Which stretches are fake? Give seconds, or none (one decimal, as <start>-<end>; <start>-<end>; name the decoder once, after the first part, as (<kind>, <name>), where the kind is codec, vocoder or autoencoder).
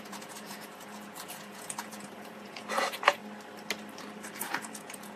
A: 0.0-3.2 (vocoder, Vocos); 4.4-5.2